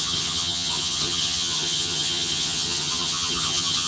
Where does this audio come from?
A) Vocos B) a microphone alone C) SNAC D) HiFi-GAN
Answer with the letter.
D